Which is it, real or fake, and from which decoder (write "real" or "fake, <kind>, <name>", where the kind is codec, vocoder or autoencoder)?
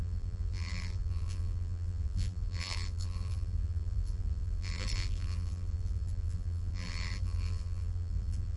fake, vocoder, BigVGAN v2